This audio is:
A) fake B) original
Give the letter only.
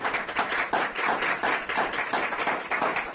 A